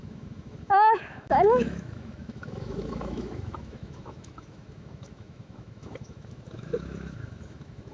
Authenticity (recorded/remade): remade